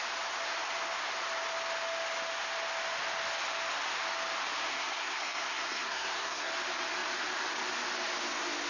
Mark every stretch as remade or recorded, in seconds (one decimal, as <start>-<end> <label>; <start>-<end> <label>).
0.0-4.7 recorded; 4.7-6.5 remade; 6.5-8.7 recorded